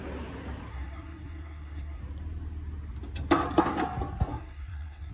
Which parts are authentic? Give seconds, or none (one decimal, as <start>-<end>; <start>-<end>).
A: 0.0-0.7; 2.0-4.3